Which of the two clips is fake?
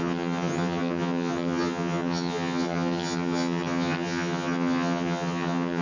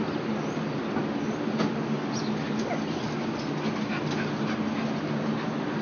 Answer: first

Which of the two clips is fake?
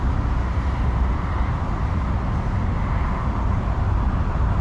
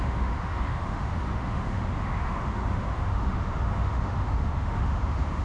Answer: second